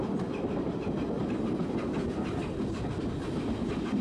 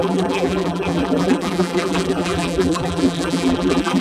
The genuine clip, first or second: first